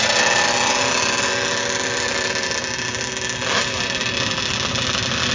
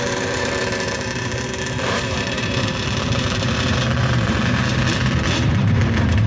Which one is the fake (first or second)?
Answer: second